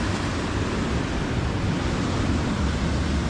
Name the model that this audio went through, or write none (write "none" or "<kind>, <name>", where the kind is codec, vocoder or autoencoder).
none